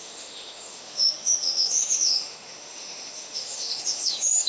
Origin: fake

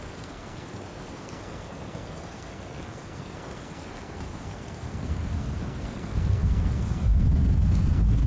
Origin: fake